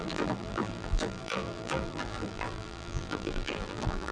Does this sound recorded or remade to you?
remade